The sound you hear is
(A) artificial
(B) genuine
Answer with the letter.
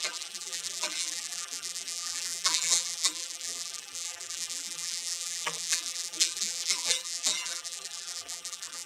A